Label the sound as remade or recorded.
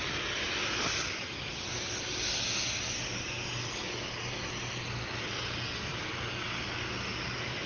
recorded